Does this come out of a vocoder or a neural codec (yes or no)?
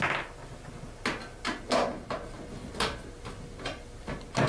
no